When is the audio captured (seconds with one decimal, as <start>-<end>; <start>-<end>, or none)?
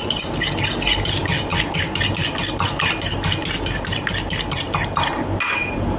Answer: 0.0-6.0